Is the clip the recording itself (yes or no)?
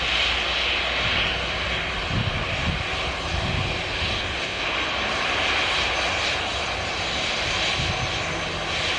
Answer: yes